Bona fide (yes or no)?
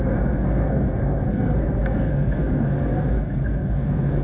no